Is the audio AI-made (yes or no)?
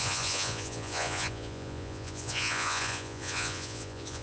yes